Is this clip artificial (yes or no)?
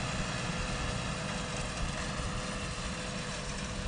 no